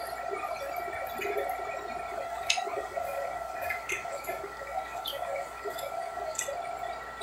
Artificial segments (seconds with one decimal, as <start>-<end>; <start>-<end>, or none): 2.1-6.4